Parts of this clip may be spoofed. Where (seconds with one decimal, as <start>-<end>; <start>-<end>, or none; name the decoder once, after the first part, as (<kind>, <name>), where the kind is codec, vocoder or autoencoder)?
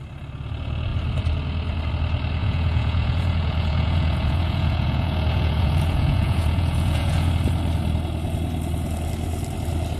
2.4-7.3 (vocoder, Vocos)